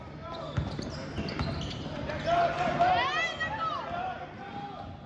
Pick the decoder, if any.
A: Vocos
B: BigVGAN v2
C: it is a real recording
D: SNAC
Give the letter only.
C